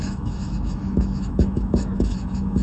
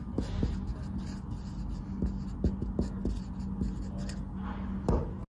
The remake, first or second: first